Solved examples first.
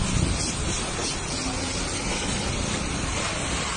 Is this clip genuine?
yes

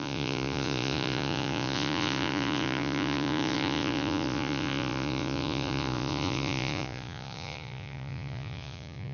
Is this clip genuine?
no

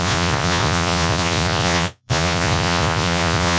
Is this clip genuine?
no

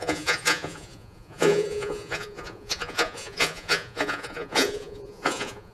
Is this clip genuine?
no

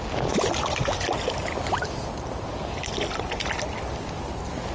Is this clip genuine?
yes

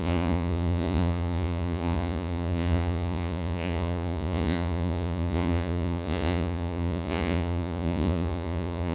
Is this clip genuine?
no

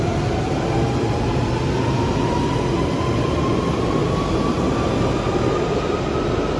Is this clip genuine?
yes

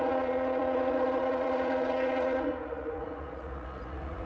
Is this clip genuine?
no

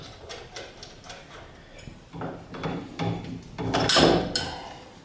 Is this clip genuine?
yes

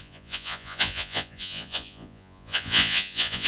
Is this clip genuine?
no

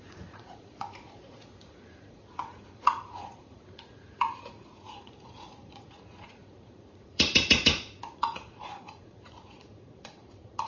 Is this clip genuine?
no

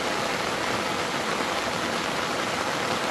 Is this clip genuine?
yes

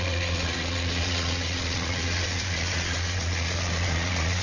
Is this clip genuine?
no